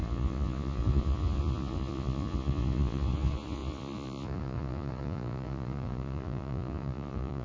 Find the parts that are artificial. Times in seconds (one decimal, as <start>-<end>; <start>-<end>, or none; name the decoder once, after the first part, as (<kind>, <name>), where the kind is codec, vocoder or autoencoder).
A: 0.0-7.4 (vocoder, Vocos)

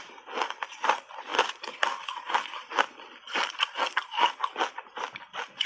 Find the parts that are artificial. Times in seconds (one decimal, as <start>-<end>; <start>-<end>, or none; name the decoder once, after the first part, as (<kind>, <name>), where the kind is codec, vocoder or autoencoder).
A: none

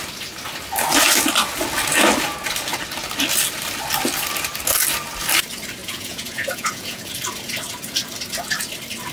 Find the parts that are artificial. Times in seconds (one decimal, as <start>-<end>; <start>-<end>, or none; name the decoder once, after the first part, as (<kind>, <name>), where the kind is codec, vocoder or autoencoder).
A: 5.8-7.1 (vocoder, Vocos)